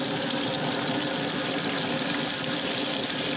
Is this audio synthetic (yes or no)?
no